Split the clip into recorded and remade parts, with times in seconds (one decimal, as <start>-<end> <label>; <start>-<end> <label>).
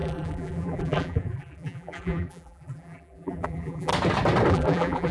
0.0-3.9 remade; 3.9-4.5 recorded; 4.5-5.1 remade